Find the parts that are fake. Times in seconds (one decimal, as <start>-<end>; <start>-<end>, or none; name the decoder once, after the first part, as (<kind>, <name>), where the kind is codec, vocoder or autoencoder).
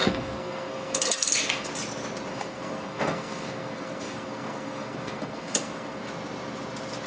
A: 0.0-1.7 (codec, SNAC); 2.3-6.1